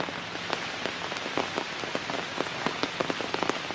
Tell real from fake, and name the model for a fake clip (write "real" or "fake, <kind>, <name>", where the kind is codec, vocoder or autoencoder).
real